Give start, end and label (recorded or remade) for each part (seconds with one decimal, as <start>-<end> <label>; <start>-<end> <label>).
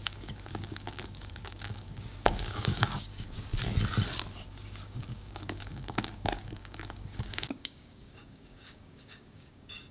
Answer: 0.0-3.5 remade; 3.5-4.5 recorded; 4.5-9.9 remade